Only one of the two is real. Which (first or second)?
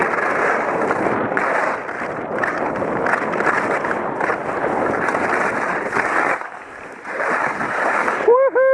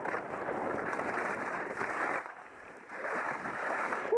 first